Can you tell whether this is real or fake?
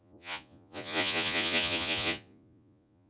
fake